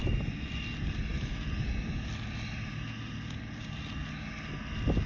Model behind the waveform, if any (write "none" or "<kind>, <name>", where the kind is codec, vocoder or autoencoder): none